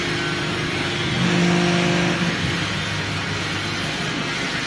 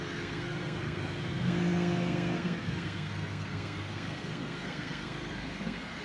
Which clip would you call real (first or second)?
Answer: first